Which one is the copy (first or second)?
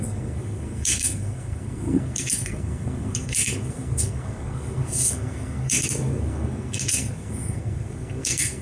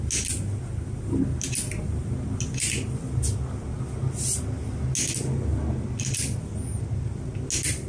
first